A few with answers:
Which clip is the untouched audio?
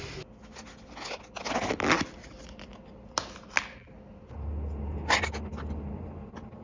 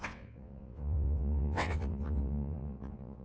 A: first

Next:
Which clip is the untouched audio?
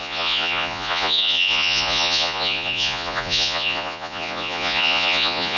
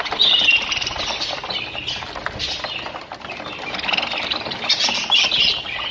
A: second